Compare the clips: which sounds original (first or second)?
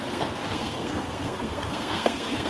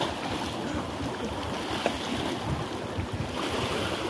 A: second